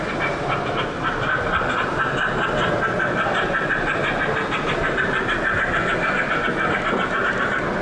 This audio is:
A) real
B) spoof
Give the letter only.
A